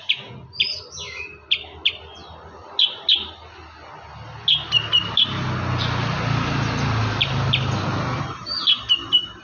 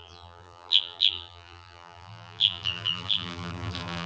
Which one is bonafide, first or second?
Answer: first